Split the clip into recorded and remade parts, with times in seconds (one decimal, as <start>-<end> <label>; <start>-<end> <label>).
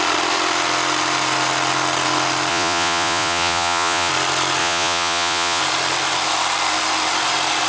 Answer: 0.0-2.5 recorded; 2.5-4.1 remade; 4.1-4.6 recorded; 4.6-5.6 remade; 5.6-7.7 recorded